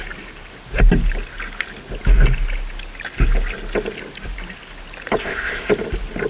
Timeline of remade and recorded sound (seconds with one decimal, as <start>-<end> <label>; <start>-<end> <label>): 0.0-5.2 recorded; 5.2-5.7 remade; 5.7-6.3 recorded